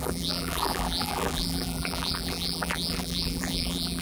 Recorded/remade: remade